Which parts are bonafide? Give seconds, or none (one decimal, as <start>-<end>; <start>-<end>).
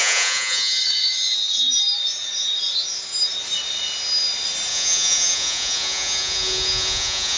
0.8-4.7